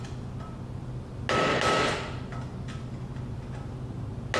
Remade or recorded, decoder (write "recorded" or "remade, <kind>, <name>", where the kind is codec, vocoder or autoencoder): recorded